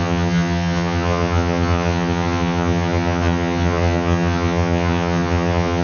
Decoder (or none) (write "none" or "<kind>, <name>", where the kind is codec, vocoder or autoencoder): vocoder, HiFi-GAN